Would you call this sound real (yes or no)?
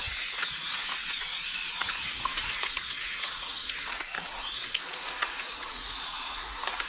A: no